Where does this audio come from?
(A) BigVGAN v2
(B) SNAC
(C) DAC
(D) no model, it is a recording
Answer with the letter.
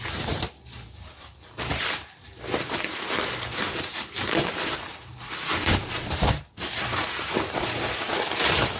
A